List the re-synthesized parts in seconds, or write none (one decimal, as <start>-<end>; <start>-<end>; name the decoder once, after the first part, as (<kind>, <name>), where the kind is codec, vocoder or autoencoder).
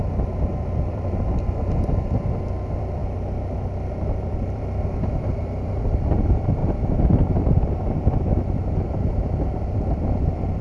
0.0-3.0 (vocoder, BigVGAN v2); 3.9-6.6; 7.5-10.6